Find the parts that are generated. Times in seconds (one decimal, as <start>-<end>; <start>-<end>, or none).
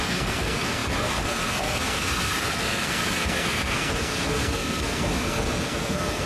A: 0.0-6.3